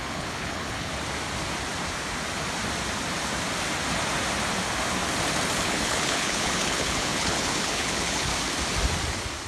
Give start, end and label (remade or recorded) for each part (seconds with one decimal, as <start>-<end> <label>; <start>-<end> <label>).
0.0-0.9 remade; 0.9-5.6 recorded; 5.6-8.3 remade; 8.3-9.5 recorded